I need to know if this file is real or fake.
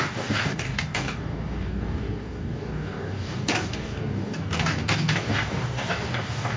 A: fake